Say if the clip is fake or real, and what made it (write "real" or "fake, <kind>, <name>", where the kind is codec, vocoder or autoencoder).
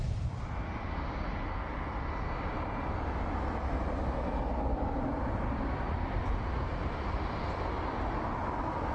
real